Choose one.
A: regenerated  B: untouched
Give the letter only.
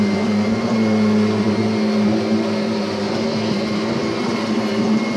B